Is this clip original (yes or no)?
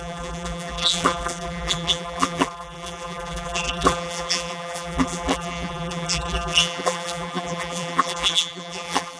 no